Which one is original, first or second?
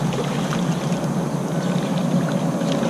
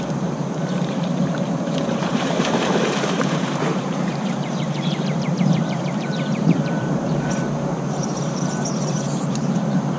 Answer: first